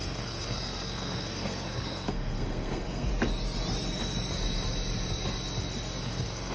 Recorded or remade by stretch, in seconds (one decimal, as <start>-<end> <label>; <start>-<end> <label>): 0.0-3.1 remade; 3.1-6.0 recorded; 6.0-6.5 remade